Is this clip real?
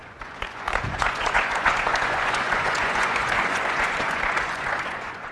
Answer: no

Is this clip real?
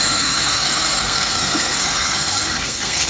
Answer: no